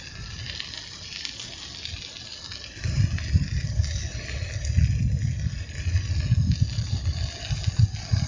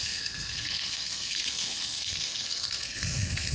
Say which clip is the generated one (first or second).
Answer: second